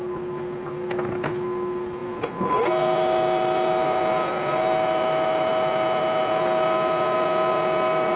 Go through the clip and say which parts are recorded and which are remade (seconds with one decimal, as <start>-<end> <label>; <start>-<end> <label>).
0.0-8.2 recorded